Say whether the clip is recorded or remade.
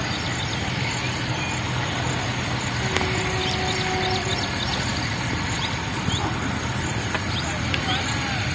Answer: recorded